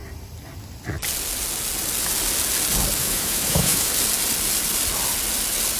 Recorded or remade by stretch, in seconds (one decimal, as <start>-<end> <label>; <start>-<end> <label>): 0.0-3.0 recorded; 3.0-3.9 remade; 3.9-5.8 recorded